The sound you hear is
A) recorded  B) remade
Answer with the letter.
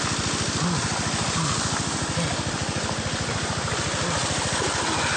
A